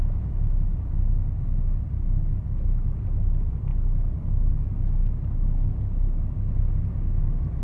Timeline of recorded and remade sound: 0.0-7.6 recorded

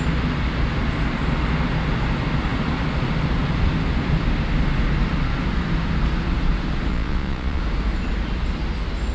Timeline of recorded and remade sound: 0.0-6.9 recorded; 6.9-7.6 remade; 7.6-9.1 recorded

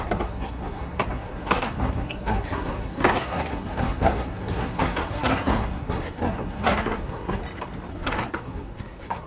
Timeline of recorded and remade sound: 0.0-7.4 remade; 7.4-7.9 recorded; 7.9-9.3 remade